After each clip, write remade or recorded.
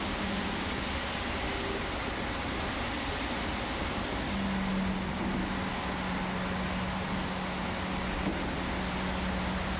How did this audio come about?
recorded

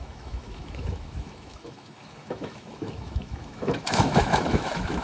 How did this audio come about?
remade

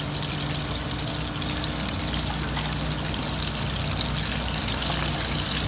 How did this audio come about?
recorded